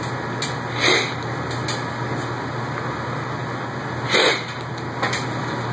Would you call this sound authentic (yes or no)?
yes